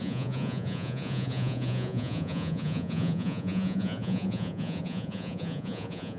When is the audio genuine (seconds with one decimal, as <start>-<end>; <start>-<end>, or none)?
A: none